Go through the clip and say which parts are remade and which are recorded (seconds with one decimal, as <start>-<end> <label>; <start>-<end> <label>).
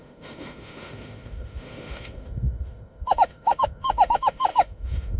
0.0-5.2 remade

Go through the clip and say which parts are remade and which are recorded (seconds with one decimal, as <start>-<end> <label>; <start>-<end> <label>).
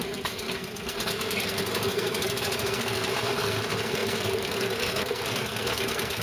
0.0-6.2 remade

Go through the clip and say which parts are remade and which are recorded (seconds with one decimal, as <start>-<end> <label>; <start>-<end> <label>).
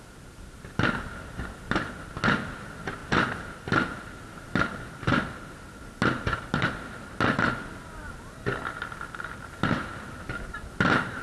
0.0-11.2 recorded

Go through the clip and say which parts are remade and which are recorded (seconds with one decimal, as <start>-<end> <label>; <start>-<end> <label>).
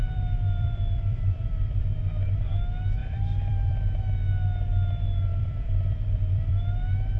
0.0-1.8 remade; 1.8-3.0 recorded; 3.0-4.0 remade; 4.0-5.3 recorded; 5.3-6.6 remade; 6.6-7.2 recorded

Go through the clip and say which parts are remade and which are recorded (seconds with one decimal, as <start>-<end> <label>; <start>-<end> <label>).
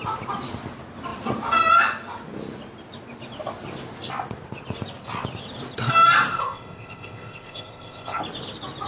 0.0-6.3 recorded; 6.3-8.2 remade; 8.2-8.9 recorded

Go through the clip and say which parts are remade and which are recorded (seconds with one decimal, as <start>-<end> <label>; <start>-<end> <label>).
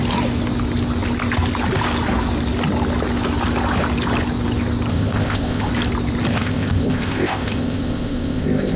0.0-4.9 recorded; 4.9-5.7 remade; 5.7-6.3 recorded; 6.3-8.8 remade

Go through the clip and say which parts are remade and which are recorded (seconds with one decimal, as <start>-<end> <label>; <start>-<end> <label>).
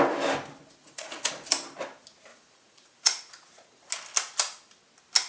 0.0-0.8 recorded; 0.8-1.3 remade; 1.3-2.3 recorded; 2.3-3.9 remade; 3.9-5.3 recorded